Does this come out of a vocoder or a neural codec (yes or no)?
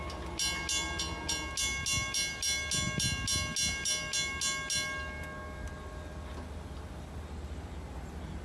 no